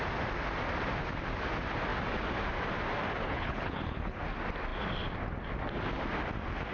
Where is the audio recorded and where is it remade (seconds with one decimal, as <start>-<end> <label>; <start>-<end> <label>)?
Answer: 0.0-3.2 recorded; 3.2-4.2 remade; 4.2-6.7 recorded

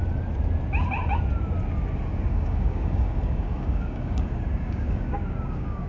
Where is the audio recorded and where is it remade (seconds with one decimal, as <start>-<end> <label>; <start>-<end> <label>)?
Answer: 0.0-2.3 recorded; 2.3-5.9 remade